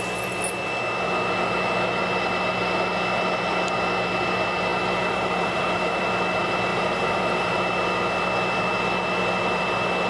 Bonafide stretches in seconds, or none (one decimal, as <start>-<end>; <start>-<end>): 0.0-4.7; 6.0-6.7; 7.6-10.1